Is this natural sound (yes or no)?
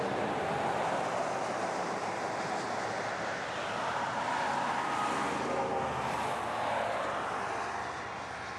yes